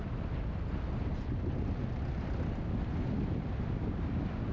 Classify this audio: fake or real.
real